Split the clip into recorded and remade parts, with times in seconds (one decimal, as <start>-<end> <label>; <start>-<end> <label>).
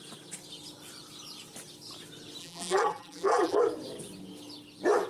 0.0-2.4 recorded; 2.4-3.6 remade; 3.6-5.1 recorded